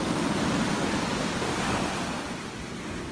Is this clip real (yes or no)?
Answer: yes